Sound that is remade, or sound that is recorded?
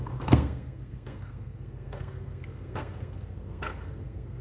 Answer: remade